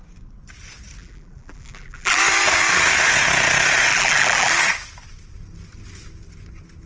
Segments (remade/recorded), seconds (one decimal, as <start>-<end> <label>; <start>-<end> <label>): 0.0-1.0 recorded; 1.0-2.2 remade; 2.2-3.9 recorded; 3.9-4.5 remade; 4.5-6.9 recorded